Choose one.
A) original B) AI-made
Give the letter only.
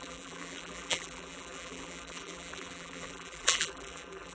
B